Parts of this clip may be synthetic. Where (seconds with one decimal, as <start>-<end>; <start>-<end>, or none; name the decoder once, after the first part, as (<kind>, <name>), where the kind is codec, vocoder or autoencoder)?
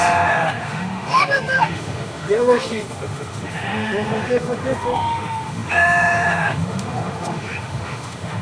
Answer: 0.0-8.4 (autoencoder, DAC-VAE)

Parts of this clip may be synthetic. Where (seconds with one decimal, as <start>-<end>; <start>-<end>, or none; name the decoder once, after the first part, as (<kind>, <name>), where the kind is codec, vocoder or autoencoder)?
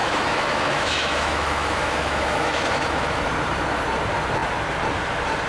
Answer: 0.0-3.2 (autoencoder, DAC-VAE)